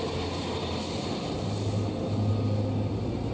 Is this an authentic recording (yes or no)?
yes